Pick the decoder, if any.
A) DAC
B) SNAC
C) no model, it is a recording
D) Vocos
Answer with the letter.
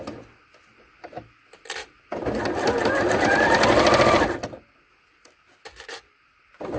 C